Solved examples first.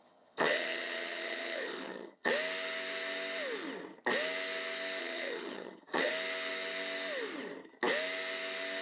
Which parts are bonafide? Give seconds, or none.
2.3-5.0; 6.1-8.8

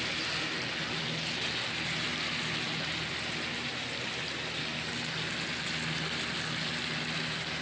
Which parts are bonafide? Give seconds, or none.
0.0-7.6

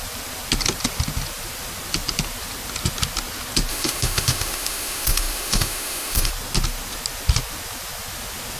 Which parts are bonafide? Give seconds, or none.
0.0-3.7; 6.3-8.6